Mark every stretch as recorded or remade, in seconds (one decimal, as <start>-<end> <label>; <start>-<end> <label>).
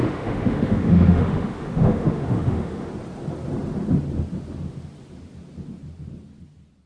0.0-2.9 remade; 2.9-6.9 recorded